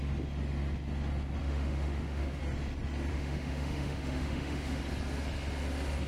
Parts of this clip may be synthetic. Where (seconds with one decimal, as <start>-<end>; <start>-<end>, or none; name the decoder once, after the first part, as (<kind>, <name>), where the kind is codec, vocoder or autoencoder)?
1.4-2.4 (autoencoder, DAC-VAE); 3.1-4.8